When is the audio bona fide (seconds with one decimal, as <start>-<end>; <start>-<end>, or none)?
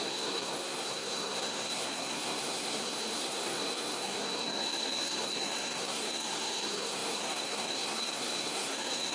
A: none